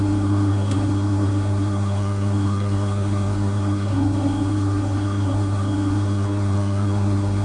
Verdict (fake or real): fake